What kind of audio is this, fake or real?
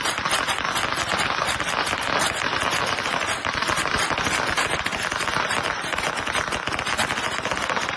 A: fake